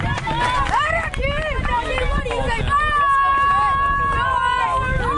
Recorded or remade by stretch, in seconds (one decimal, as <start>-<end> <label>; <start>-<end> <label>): 0.0-5.2 recorded